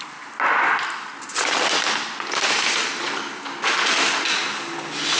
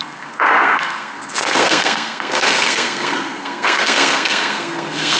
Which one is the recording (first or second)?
first